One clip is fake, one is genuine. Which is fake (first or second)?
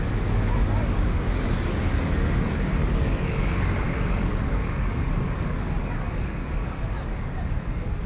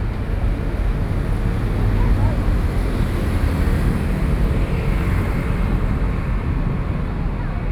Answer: first